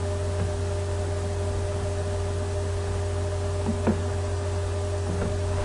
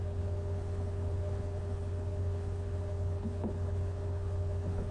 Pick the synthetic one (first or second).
second